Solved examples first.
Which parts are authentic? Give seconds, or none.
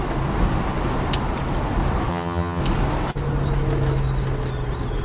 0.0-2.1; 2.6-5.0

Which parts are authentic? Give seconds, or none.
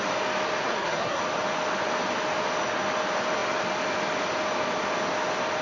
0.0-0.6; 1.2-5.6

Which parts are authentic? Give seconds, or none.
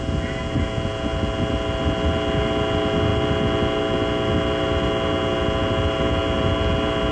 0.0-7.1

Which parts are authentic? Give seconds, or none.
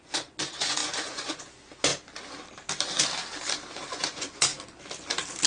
1.9-3.9; 4.5-5.5